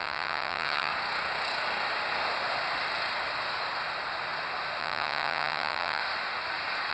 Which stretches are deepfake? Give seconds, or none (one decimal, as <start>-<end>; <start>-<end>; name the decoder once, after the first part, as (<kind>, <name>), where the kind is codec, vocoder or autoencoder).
0.0-0.9 (vocoder, HiFi-GAN); 4.8-6.0